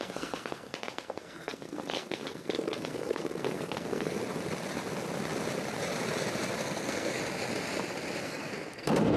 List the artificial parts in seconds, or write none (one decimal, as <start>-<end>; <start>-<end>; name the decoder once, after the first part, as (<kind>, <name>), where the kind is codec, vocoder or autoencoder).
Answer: 0.0-4.2 (codec, SNAC); 6.6-7.2; 8.2-9.2